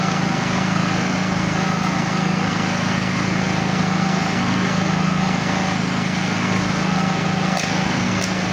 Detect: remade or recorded remade